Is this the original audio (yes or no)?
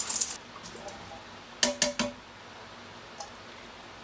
yes